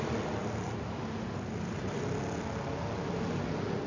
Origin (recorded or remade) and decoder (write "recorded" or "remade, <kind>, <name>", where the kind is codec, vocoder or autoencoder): recorded